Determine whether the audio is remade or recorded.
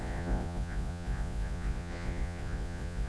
remade